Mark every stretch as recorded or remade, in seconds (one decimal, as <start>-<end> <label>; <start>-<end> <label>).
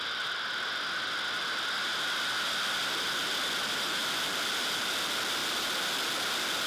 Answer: 0.0-6.7 recorded